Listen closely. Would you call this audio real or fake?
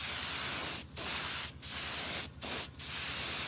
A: real